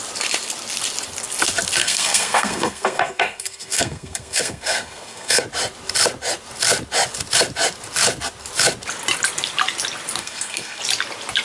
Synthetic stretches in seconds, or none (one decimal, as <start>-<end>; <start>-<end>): 1.8-5.4; 10.2-10.8